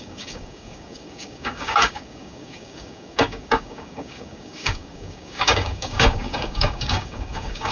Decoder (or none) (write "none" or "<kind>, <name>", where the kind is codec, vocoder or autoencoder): codec, DAC